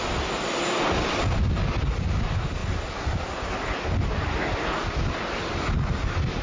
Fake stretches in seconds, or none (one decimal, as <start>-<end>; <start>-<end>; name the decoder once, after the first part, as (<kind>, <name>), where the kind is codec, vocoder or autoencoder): none

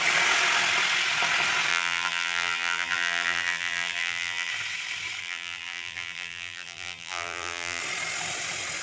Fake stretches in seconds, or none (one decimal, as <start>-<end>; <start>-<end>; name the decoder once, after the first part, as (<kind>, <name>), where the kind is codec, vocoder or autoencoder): 1.7-4.5 (vocoder, BigVGAN v2); 5.2-7.8

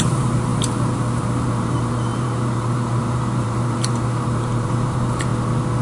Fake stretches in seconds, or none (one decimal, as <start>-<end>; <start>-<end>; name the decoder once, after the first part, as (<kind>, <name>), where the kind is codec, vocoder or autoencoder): 0.0-5.3 (vocoder, BigVGAN v2)

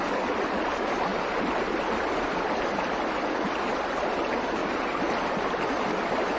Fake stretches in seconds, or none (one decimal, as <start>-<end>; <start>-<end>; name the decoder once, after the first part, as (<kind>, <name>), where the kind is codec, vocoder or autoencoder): 1.1-3.0 (vocoder, BigVGAN v2); 4.6-6.0

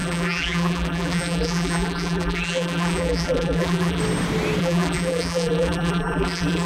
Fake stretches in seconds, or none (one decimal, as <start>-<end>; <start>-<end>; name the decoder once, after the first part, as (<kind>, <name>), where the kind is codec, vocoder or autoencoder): 0.0-4.0 (vocoder, BigVGAN v2); 4.6-6.7

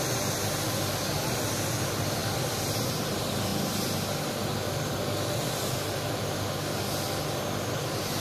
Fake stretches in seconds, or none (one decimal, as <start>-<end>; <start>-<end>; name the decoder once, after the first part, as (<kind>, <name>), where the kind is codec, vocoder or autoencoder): none